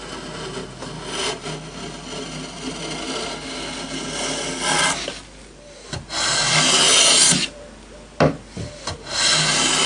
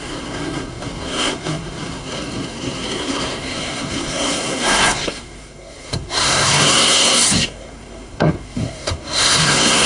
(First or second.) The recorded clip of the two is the first